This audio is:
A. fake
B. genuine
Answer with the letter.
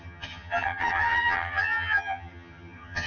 A